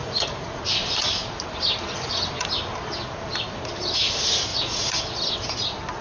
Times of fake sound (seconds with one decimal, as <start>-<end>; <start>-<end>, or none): 0.0-0.6; 4.5-5.0